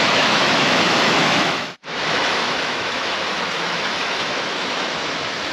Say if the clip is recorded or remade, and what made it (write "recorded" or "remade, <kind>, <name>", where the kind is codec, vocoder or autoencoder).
remade, autoencoder, DAC-VAE